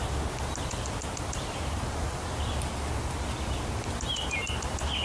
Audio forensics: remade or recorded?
recorded